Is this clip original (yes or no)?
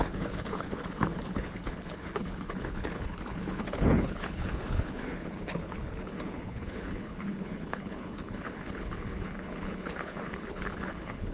no